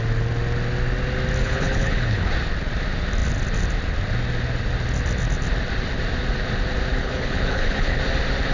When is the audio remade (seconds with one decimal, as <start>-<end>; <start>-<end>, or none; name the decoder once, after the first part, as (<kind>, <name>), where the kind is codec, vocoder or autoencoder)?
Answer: 1.4-2.3 (codec, HILCodec); 7.0-8.0

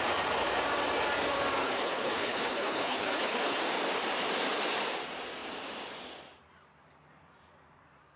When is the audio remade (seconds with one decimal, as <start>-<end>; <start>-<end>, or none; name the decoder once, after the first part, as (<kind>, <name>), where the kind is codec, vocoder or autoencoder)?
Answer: 1.6-3.6 (codec, HILCodec)

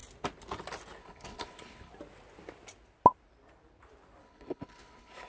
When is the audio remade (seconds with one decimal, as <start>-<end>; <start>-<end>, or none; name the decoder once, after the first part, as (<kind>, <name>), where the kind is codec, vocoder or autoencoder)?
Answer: 1.0-1.9 (codec, HILCodec); 4.2-5.3

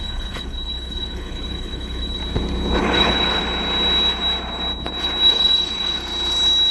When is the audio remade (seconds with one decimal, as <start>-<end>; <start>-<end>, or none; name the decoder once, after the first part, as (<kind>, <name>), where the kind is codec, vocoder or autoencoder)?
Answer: 0.0-2.2 (codec, HILCodec); 2.8-3.4; 5.3-6.0

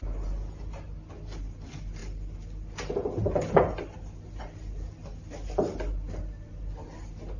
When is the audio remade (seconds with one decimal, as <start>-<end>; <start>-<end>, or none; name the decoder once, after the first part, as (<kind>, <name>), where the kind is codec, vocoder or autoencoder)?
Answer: none

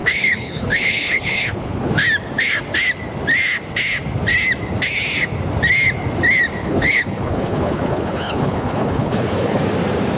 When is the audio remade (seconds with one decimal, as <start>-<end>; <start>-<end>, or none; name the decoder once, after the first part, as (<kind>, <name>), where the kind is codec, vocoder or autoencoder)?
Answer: 0.0-1.9 (codec, HILCodec); 6.6-9.6